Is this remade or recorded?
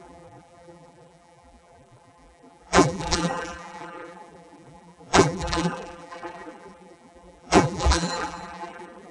remade